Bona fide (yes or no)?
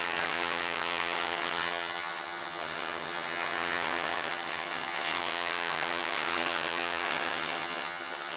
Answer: no